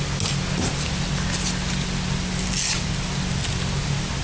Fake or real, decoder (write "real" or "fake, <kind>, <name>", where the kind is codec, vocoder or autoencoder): real